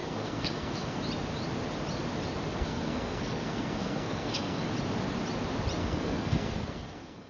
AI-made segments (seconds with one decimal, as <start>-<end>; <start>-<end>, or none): 0.0-1.0; 2.5-4.7; 5.8-7.3